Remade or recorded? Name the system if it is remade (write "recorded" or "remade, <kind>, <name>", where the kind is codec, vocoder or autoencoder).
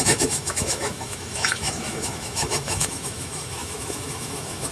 remade, autoencoder, DAC-VAE